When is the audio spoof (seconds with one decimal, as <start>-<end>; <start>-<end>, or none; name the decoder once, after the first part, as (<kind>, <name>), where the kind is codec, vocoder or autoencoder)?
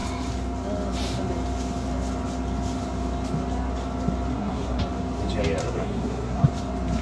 4.3-4.8 (codec, SNAC); 5.6-6.5